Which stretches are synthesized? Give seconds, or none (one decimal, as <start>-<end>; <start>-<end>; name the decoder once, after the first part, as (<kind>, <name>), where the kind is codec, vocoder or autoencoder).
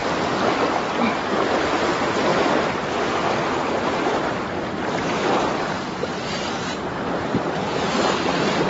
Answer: 2.3-6.5 (vocoder, BigVGAN v2)